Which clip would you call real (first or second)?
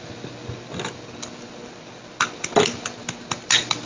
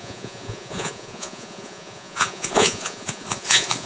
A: first